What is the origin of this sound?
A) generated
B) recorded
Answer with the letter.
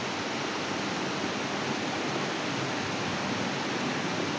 B